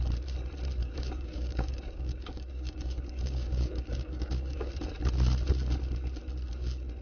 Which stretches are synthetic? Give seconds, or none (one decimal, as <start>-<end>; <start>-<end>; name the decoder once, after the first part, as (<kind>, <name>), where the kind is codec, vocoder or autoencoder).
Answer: 0.8-4.7 (codec, DAC)